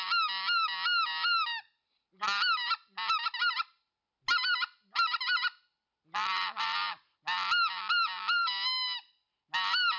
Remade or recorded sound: recorded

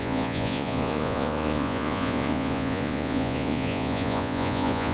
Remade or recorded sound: remade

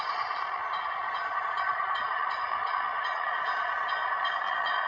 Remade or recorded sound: remade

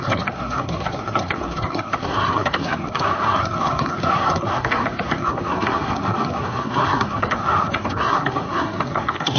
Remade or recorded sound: remade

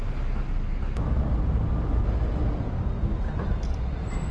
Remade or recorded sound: recorded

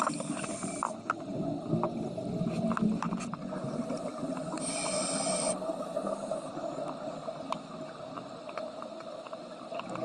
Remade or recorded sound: recorded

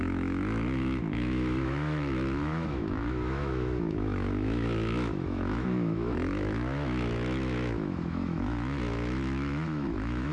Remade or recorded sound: remade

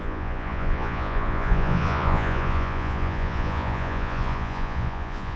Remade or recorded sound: remade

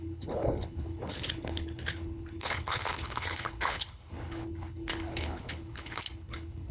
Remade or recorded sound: remade